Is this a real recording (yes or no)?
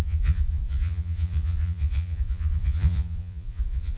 no